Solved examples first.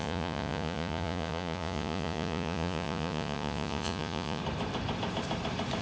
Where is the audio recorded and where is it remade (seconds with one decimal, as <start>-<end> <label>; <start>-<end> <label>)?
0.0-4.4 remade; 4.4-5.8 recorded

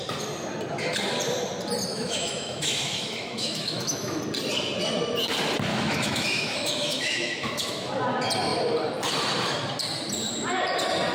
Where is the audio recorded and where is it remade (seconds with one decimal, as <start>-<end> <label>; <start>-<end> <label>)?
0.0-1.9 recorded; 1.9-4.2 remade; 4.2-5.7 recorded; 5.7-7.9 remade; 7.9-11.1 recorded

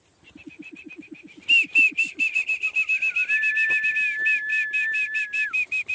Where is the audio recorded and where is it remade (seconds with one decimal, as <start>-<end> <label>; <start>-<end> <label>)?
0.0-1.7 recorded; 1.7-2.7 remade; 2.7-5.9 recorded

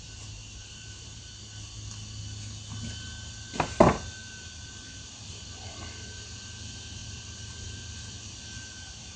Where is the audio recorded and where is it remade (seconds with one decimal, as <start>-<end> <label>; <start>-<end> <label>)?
0.0-0.4 recorded; 0.4-1.4 remade; 1.4-4.2 recorded; 4.2-5.6 remade; 5.6-7.0 recorded; 7.0-9.2 remade